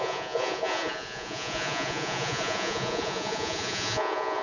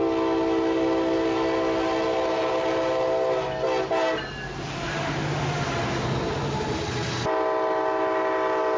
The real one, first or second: second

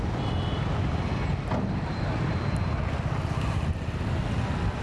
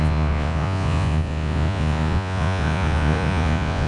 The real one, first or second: first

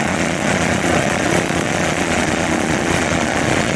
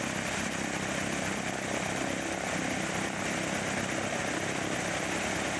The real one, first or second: second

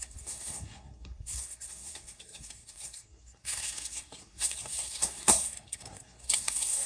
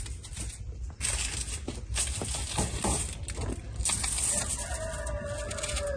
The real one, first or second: second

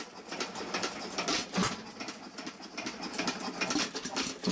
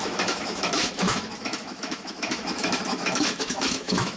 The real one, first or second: first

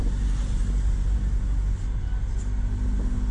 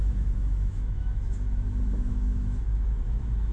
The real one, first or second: first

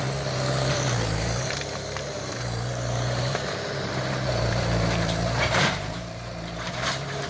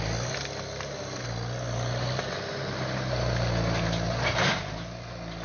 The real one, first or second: second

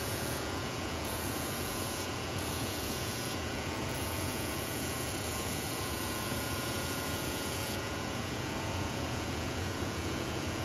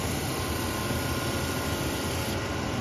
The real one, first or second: second